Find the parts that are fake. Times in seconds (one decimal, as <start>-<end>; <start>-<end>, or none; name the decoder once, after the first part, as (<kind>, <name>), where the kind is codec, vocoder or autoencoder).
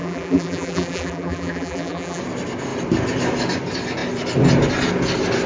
0.0-2.2 (vocoder, BigVGAN v2)